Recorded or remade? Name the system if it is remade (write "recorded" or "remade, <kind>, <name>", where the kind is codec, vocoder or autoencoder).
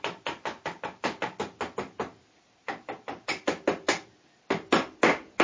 recorded